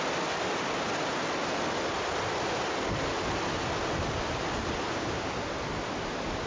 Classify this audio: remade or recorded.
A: recorded